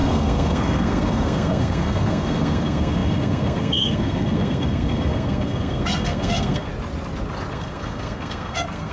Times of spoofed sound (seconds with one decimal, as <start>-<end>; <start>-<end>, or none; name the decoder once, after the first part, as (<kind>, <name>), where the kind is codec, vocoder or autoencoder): 0.0-6.7 (codec, SNAC); 7.5-8.9